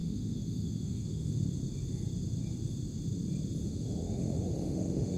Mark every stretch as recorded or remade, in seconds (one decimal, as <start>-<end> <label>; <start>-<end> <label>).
0.0-1.3 remade; 1.3-3.6 recorded; 3.6-5.2 remade